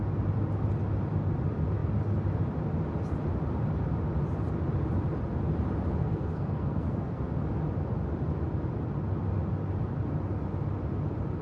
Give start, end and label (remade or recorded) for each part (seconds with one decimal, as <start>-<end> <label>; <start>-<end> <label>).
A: 0.0-6.0 recorded; 6.0-7.2 remade; 7.2-11.4 recorded